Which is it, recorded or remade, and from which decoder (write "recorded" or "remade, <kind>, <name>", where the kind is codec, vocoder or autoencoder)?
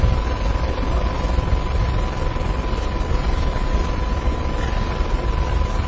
recorded